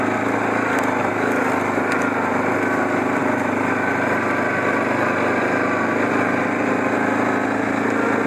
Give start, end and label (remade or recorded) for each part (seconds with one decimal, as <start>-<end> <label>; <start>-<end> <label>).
0.0-8.3 recorded